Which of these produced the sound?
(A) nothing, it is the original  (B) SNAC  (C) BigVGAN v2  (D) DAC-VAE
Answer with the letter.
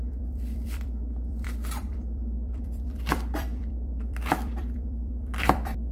C